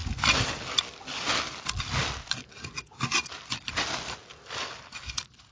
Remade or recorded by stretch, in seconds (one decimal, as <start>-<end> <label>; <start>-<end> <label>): 0.0-5.5 recorded